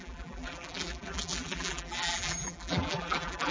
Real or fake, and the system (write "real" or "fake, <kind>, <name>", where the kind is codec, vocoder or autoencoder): fake, vocoder, BigVGAN v2